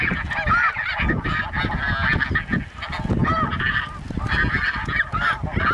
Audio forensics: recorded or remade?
recorded